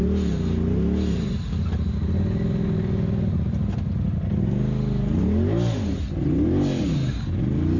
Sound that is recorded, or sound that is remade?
recorded